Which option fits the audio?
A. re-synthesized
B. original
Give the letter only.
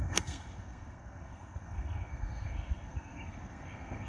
A